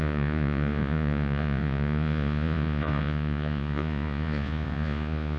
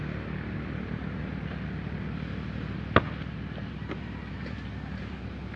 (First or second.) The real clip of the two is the second